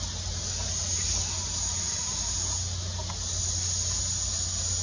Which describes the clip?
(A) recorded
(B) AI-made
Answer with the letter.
A